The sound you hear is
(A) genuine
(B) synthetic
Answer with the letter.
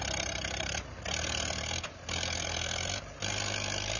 A